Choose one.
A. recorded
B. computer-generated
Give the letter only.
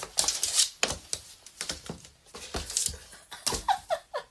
A